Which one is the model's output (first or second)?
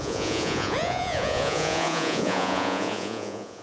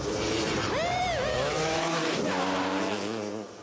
first